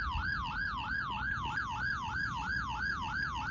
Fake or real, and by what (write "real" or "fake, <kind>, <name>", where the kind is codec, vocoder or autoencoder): real